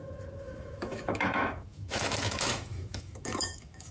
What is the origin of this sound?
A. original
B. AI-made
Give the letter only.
B